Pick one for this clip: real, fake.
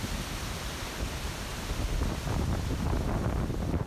real